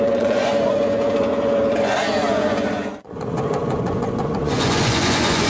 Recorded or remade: remade